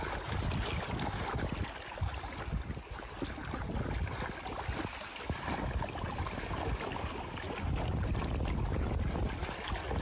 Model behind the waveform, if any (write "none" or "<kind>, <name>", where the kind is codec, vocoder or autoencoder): none